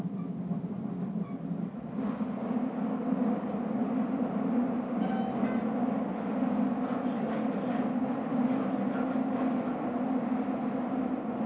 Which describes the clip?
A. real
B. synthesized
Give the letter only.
A